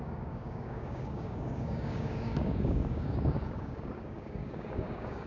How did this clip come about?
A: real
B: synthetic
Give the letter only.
B